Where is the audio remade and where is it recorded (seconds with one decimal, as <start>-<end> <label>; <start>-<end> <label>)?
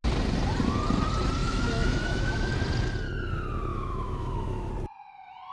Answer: 0.0-1.4 recorded; 1.4-2.5 remade; 2.5-3.7 recorded; 3.7-4.7 remade; 4.7-5.5 recorded